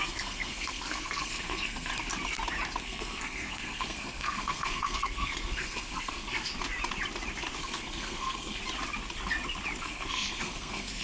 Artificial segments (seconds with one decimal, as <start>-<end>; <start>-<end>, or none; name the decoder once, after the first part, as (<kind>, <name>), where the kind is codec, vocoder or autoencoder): 0.0-1.9 (codec, SNAC); 2.8-6.5; 7.6-8.6; 9.8-11.0